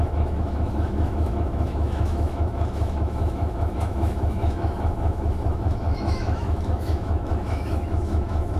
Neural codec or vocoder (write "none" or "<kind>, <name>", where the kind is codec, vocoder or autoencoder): autoencoder, DAC-VAE